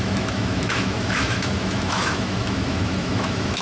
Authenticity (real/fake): fake